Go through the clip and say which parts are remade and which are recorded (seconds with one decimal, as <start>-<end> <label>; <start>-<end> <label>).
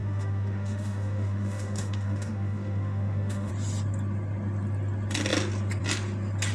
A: 0.0-3.5 remade; 3.5-6.5 recorded